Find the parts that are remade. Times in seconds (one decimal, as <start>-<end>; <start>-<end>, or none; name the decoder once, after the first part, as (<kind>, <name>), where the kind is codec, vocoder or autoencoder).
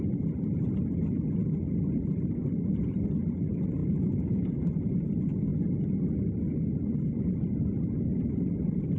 3.8-4.7 (codec, DAC)